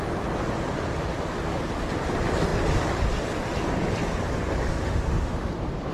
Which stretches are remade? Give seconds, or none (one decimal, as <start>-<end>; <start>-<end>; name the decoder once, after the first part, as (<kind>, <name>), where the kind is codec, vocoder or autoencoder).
4.7-5.5 (autoencoder, DAC-VAE)